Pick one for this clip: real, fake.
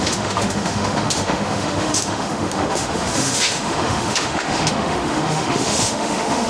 fake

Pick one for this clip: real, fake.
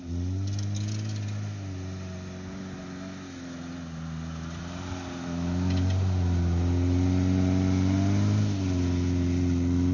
real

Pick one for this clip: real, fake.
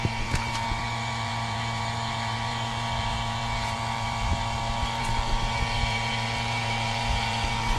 fake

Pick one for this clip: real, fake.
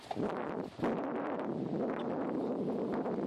real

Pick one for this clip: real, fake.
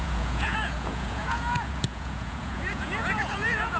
fake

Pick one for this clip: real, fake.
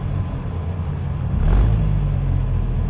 real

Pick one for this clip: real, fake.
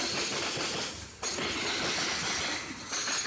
real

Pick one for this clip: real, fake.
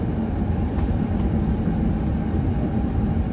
fake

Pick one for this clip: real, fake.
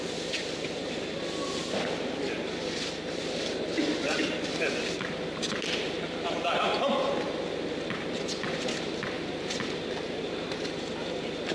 fake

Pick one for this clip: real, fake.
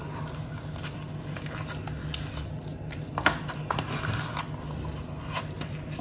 real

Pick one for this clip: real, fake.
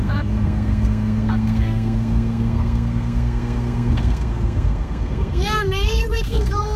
fake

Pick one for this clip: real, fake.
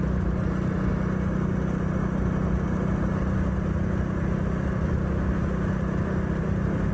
real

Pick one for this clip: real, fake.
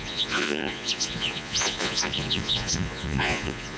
fake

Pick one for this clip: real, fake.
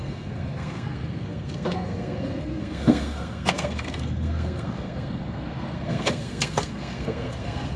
fake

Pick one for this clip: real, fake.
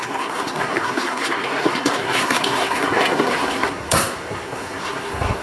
fake